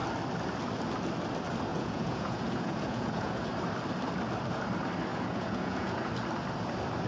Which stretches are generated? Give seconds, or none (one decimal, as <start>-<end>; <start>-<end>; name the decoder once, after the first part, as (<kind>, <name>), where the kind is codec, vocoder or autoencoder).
1.7-3.3 (vocoder, Vocos); 5.1-6.1